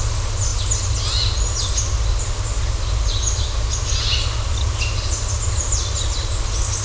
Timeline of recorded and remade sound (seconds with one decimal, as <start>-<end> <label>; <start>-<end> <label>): 0.0-6.8 recorded